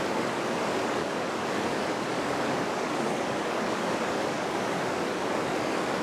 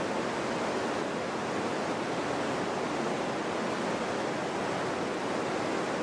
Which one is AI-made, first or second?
first